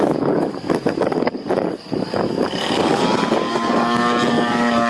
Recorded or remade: remade